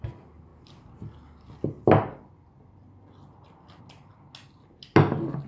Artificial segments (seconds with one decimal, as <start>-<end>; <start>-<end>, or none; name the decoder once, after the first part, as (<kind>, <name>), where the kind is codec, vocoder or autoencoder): none